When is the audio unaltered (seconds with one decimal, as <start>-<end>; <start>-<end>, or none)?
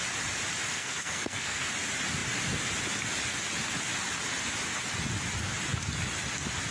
0.0-0.7; 1.7-6.7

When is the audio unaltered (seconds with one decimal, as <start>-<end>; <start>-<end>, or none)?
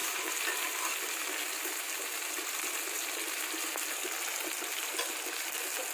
0.0-5.9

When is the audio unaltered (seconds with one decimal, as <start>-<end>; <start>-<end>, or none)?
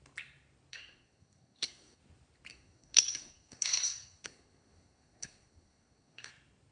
0.0-0.7; 2.0-2.5; 6.3-6.7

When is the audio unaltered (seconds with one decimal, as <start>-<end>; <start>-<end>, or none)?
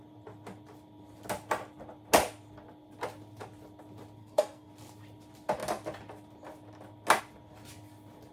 0.0-4.2; 4.7-8.3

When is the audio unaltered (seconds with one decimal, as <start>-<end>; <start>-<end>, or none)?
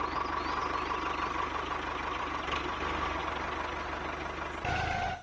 0.0-5.2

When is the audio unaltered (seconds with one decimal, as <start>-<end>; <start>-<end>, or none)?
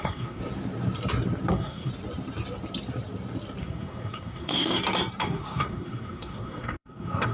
0.4-1.5; 1.9-3.6; 4.7-5.2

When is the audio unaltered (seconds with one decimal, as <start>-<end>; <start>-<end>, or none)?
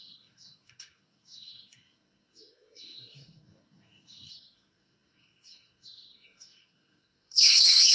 none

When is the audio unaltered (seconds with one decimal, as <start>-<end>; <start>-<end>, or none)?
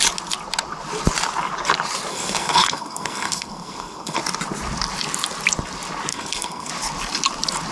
0.0-2.1; 4.2-6.1; 6.7-7.7